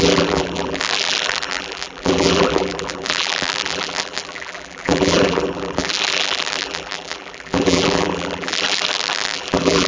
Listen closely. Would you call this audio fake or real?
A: fake